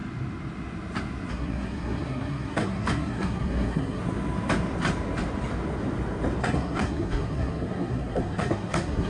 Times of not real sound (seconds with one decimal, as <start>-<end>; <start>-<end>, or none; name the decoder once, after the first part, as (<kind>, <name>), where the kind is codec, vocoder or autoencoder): 1.3-4.0 (codec, SNAC); 6.4-9.1